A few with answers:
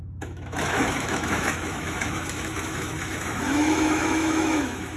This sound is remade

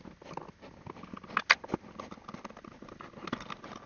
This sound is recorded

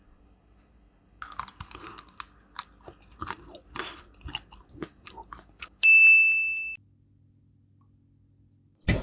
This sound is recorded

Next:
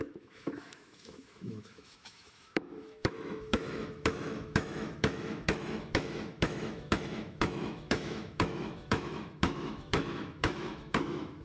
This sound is remade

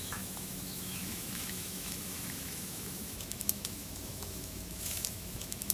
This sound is remade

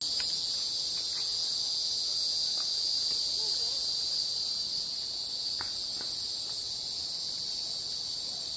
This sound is recorded